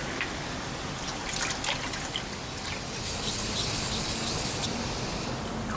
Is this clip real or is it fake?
real